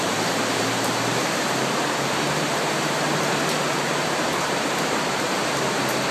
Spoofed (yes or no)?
yes